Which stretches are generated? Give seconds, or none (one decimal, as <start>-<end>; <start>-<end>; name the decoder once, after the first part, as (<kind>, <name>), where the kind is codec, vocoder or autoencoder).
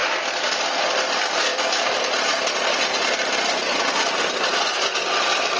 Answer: none